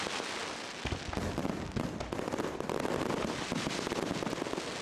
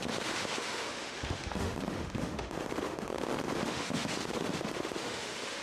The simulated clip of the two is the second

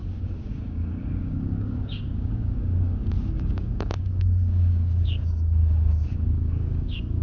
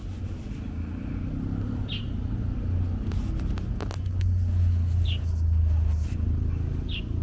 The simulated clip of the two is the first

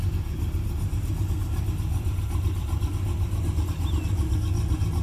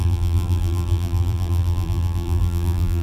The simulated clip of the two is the second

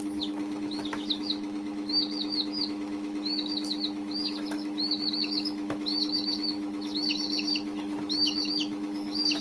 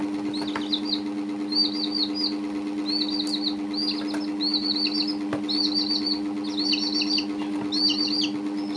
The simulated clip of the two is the first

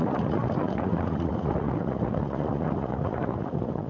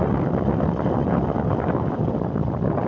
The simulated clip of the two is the first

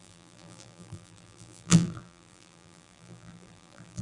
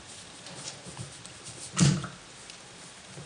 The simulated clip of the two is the first